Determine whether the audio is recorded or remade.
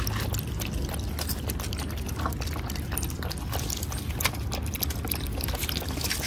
recorded